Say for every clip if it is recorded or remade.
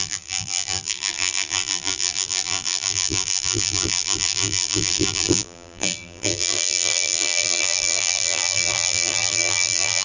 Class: remade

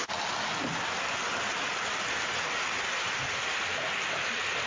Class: recorded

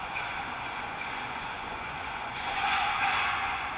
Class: remade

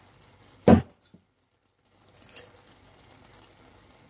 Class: recorded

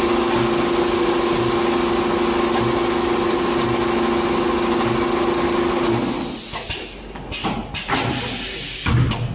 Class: recorded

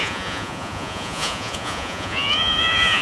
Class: remade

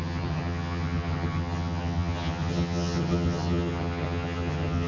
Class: remade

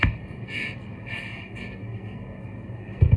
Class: remade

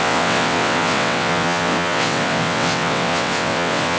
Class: remade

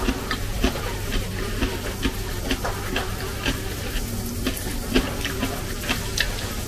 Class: recorded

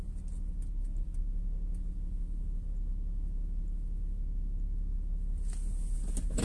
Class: recorded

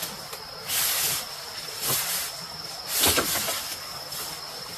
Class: recorded